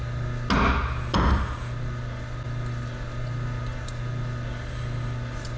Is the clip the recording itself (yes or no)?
yes